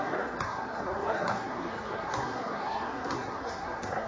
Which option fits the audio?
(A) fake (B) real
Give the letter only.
A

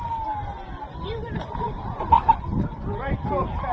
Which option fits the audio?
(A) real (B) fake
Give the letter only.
A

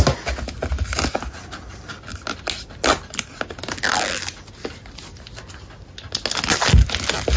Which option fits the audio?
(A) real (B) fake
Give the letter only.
A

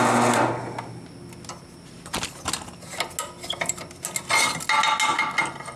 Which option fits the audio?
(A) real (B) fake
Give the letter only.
A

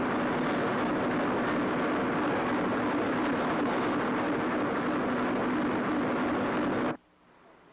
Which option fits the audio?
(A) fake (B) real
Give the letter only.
B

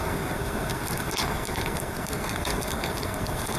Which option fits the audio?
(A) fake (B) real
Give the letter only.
A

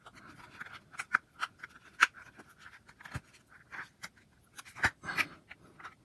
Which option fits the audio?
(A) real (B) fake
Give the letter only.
A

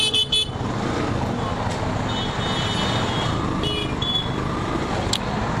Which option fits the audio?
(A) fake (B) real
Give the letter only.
B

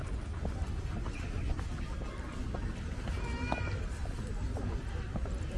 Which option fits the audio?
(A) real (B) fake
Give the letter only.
A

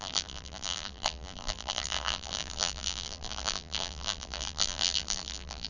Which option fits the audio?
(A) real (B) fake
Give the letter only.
B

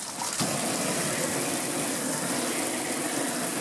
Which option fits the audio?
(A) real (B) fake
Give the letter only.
A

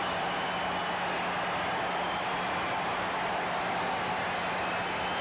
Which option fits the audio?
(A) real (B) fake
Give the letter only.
A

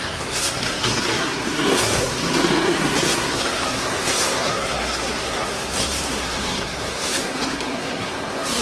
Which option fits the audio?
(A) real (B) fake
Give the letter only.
B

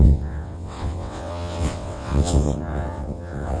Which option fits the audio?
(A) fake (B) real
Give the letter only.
A